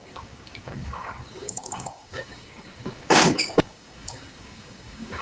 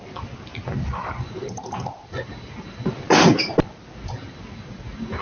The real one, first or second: second